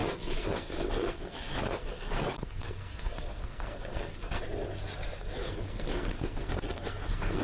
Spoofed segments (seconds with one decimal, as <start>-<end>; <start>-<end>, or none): 0.0-4.4; 5.4-7.4